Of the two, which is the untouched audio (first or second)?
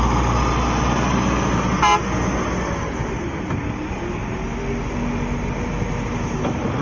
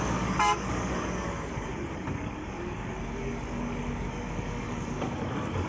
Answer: first